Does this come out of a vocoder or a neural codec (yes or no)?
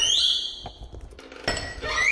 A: no